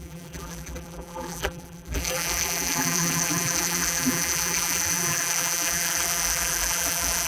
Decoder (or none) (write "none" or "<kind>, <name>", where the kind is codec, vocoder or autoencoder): vocoder, BigVGAN v2